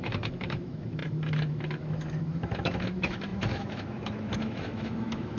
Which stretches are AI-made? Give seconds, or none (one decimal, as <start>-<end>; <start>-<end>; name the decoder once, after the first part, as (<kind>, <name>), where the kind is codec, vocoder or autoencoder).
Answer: 0.0-5.4 (autoencoder, DAC-VAE)